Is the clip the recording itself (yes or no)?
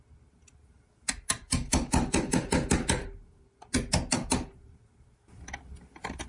yes